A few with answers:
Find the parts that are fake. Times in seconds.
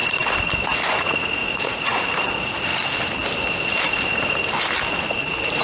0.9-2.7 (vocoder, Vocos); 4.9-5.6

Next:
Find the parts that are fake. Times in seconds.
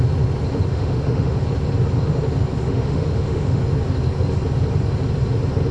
0.7-1.4 (autoencoder, DAC-VAE); 2.6-3.6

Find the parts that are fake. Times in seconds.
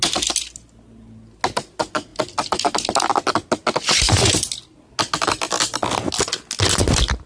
none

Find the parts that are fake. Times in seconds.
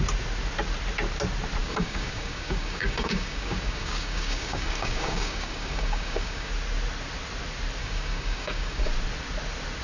1.6-6.5 (codec, DAC); 7.8-8.9